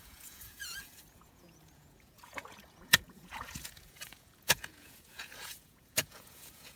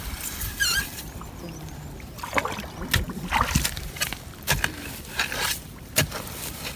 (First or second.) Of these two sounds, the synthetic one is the first